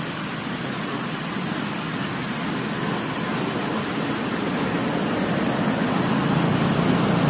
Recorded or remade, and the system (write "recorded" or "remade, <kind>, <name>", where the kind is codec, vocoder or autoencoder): recorded